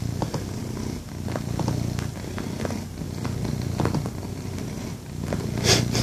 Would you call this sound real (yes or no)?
yes